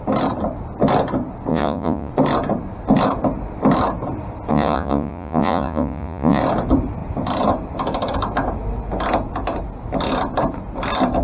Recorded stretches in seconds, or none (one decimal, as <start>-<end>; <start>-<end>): 0.0-1.5; 2.1-4.5; 6.4-11.2